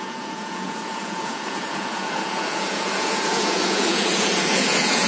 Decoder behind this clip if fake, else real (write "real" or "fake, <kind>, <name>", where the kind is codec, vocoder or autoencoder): fake, vocoder, Vocos